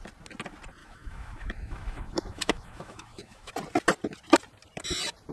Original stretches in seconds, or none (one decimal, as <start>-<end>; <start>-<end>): 0.0-0.8; 3.5-5.3